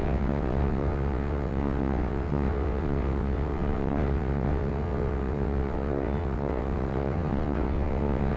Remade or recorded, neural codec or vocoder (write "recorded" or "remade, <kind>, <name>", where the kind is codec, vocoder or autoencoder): remade, vocoder, WaveNeXt